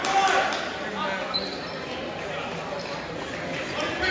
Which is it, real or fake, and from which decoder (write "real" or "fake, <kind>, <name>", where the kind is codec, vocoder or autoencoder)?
real